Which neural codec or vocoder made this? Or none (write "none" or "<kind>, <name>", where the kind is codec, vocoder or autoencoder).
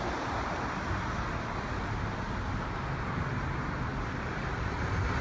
none